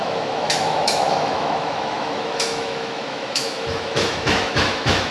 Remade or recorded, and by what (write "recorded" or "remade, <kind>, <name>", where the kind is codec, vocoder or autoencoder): remade, autoencoder, DAC-VAE